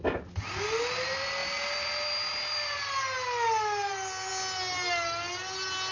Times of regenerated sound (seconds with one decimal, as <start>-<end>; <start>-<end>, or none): none